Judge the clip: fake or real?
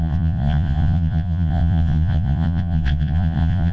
fake